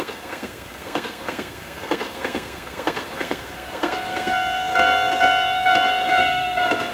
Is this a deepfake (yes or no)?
yes